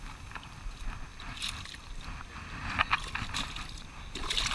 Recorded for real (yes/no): yes